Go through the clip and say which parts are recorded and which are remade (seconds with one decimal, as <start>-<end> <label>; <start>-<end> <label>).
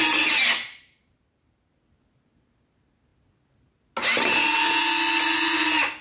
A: 0.0-6.0 recorded